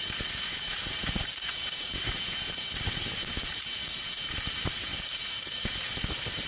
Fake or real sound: fake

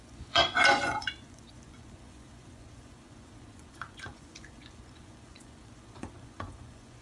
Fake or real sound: fake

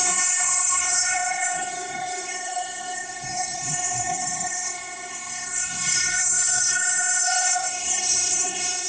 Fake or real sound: fake